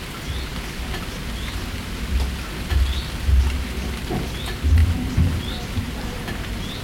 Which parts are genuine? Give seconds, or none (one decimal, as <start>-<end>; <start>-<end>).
0.0-4.8